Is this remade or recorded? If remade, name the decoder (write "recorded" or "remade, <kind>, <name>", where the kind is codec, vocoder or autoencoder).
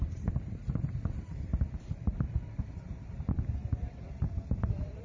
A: remade, vocoder, BigVGAN v2